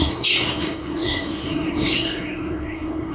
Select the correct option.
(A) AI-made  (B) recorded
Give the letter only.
A